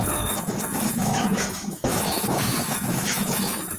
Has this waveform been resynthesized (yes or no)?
yes